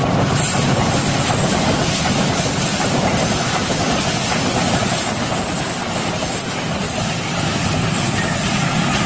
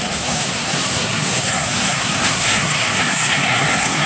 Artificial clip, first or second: second